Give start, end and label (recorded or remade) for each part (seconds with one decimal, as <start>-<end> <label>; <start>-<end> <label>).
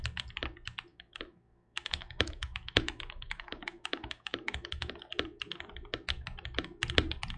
0.0-0.9 recorded; 0.9-4.9 remade; 4.9-7.4 recorded